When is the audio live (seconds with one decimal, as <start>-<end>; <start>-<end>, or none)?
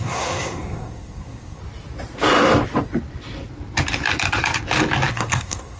1.6-5.1